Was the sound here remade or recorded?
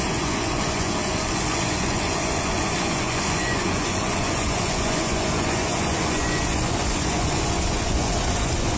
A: remade